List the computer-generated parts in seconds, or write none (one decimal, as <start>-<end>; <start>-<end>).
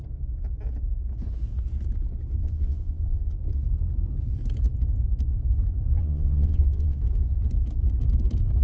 2.4-3.4; 6.0-7.0